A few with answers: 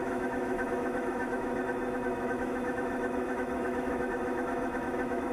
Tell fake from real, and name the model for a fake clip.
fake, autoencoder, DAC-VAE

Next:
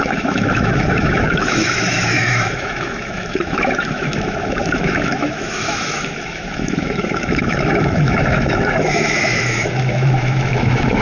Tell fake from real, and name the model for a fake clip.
fake, autoencoder, DAC-VAE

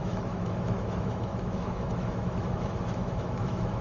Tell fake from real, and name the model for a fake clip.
fake, autoencoder, DAC-VAE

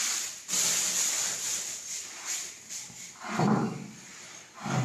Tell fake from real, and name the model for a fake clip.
real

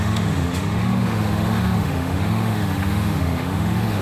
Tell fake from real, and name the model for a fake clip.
fake, autoencoder, DAC-VAE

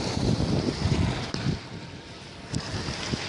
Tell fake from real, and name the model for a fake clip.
real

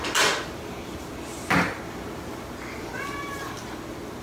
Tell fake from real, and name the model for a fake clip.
real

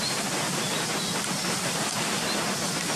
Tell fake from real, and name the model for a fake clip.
real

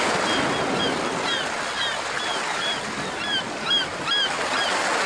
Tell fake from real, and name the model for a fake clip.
real